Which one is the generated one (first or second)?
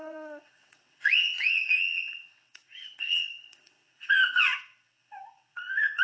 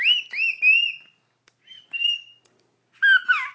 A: first